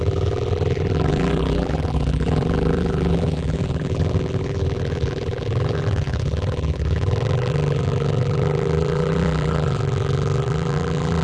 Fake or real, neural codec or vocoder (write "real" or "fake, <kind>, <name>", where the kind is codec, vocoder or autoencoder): fake, vocoder, BigVGAN v2